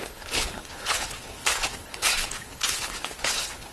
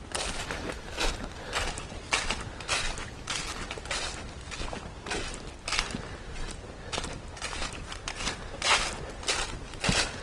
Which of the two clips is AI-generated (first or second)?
first